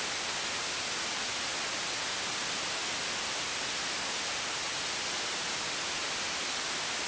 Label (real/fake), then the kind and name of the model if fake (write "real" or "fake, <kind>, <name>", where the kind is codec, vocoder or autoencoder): real